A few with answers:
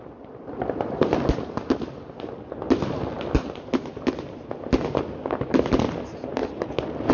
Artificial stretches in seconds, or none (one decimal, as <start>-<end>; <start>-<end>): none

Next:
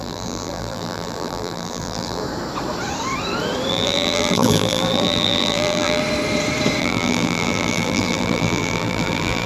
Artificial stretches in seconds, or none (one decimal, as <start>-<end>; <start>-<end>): 0.0-2.2; 3.7-6.0; 6.8-9.5

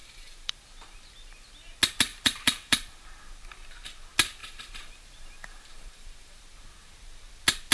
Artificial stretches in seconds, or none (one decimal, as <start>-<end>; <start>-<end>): 0.0-0.6; 2.1-3.0; 4.4-6.4

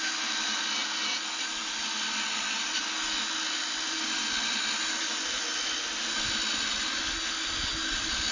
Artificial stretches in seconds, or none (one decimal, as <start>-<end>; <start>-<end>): none

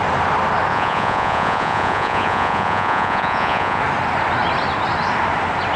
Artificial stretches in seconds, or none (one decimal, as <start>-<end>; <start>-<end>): 0.7-3.8

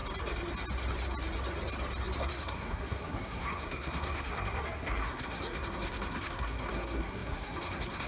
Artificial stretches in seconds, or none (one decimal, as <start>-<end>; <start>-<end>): 2.2-8.1

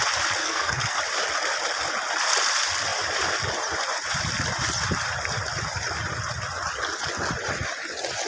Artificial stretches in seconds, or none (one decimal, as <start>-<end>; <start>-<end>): 0.4-1.0